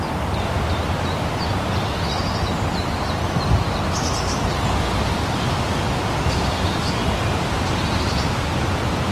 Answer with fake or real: real